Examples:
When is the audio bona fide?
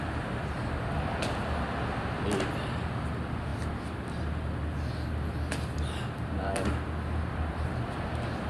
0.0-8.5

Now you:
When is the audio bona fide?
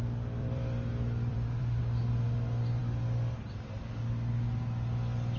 0.0-0.4; 1.8-5.4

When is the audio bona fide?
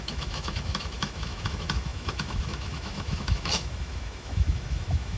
none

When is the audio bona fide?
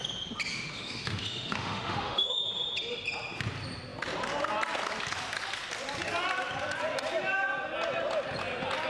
0.0-0.5; 2.4-8.9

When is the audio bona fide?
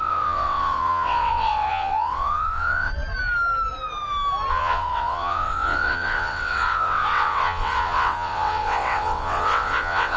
2.9-4.5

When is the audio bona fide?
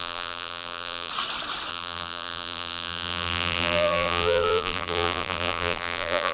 1.1-1.7